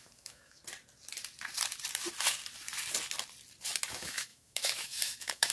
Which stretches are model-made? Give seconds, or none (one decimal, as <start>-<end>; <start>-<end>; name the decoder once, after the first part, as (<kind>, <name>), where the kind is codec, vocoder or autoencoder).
0.0-0.6 (autoencoder, DAC-VAE); 3.9-5.5